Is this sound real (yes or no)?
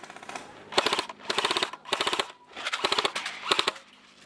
no